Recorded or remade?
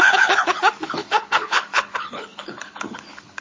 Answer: remade